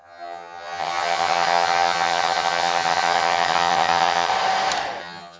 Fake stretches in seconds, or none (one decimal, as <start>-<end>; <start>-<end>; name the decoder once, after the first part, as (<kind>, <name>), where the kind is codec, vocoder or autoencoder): 0.0-4.3 (vocoder, HiFi-GAN); 5.0-5.4